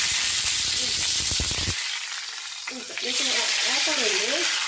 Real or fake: real